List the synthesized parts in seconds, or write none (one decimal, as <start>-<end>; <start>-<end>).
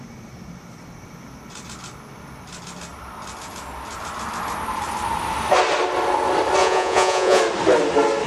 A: 6.6-7.4